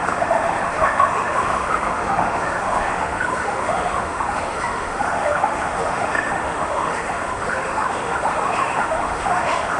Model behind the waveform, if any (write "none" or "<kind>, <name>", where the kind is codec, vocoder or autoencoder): autoencoder, DAC-VAE